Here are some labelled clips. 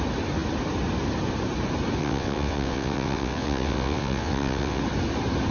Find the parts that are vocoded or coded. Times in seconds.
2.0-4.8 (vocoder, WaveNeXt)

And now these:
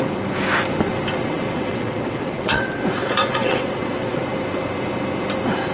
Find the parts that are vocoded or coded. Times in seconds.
1.2-4.2 (vocoder, WaveNeXt)

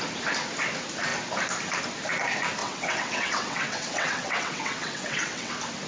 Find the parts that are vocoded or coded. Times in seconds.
2.6-5.5 (vocoder, WaveNeXt)

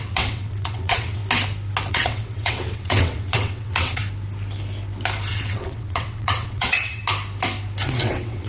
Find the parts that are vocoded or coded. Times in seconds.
0.0-1.2 (vocoder, WaveNeXt); 1.9-4.0; 5.3-7.0; 7.8-8.5